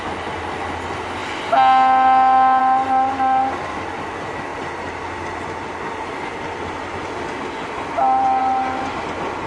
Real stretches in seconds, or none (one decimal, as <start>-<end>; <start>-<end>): 0.0-9.5